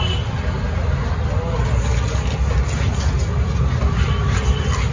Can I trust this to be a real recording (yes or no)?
yes